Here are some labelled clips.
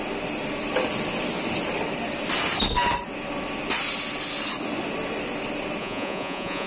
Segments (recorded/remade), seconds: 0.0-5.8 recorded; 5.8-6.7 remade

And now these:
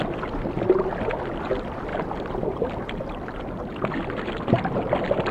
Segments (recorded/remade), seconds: 0.0-5.3 recorded

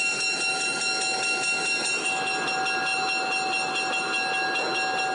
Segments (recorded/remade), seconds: 0.0-5.1 recorded